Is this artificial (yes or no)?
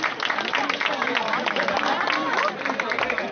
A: no